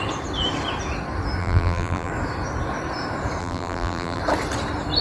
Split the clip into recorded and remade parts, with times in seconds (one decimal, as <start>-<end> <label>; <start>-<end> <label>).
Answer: 0.0-1.4 recorded; 1.4-2.1 remade; 2.1-3.4 recorded; 3.4-4.2 remade; 4.2-5.0 recorded